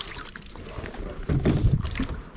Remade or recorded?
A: recorded